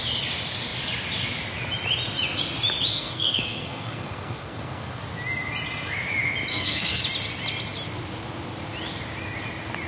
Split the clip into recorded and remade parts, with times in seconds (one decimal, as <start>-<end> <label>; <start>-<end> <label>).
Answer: 0.0-2.9 recorded; 2.9-5.0 remade; 5.0-6.5 recorded; 6.5-7.0 remade; 7.0-9.9 recorded